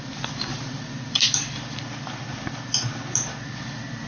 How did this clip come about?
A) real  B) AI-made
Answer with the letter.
A